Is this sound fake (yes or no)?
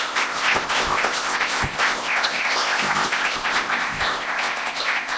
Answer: yes